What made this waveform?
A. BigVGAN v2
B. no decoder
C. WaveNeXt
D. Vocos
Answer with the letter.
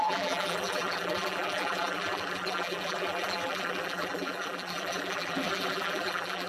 A